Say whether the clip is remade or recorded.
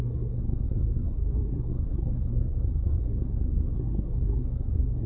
remade